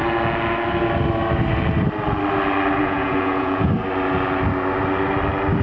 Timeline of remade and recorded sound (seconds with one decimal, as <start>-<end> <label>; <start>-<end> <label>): 0.0-2.8 recorded; 2.8-3.7 remade; 3.7-5.6 recorded